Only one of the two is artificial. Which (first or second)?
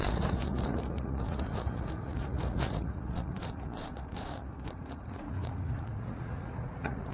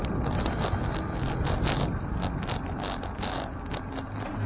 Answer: first